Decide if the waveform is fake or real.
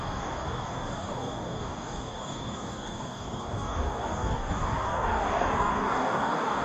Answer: fake